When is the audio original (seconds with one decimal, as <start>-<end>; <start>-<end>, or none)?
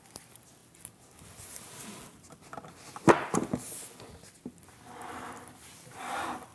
0.0-6.5